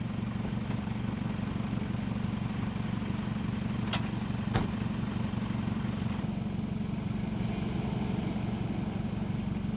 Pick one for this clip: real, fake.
real